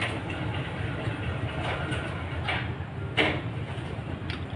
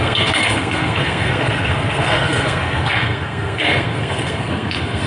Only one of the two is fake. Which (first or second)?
second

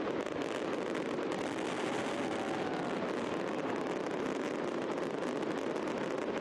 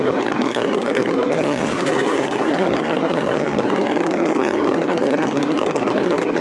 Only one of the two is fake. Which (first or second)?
second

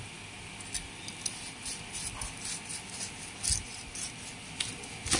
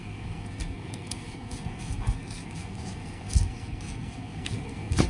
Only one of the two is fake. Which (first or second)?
second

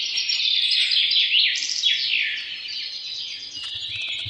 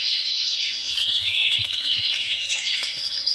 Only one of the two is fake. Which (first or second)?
second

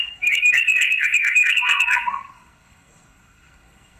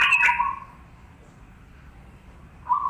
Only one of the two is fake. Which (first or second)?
first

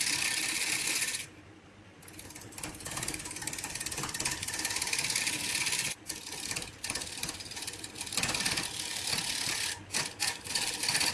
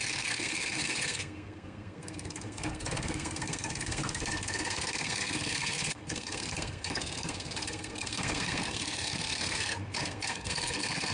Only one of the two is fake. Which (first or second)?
second